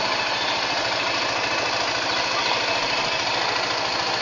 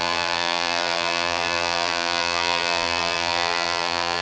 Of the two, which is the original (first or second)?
first